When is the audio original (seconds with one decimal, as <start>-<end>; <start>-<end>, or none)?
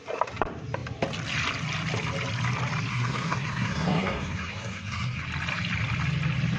0.0-2.9; 5.2-6.6